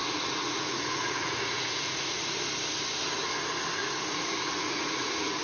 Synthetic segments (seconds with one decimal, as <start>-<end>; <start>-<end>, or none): 0.0-2.3; 3.8-5.4